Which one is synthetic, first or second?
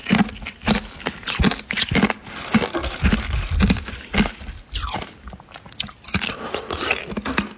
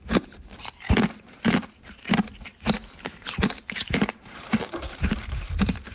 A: second